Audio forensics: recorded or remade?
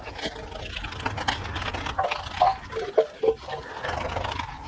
recorded